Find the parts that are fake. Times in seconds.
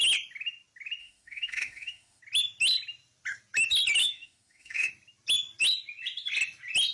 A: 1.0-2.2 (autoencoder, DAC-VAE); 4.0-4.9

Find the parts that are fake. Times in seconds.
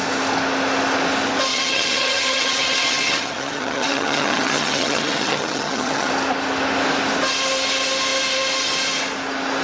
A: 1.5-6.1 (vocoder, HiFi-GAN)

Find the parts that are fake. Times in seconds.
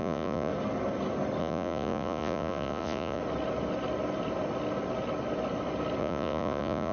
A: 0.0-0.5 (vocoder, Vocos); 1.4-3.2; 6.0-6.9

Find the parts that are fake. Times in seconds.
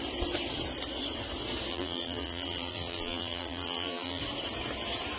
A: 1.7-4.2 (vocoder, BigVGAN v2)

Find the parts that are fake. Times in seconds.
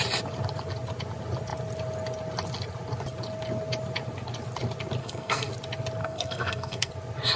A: 5.0-5.5 (codec, SNAC); 6.0-6.9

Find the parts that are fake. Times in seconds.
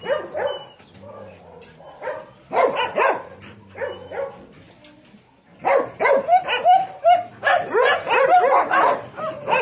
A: none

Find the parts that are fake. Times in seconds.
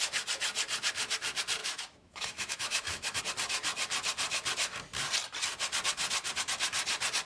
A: 1.6-3.2 (autoencoder, DAC-VAE)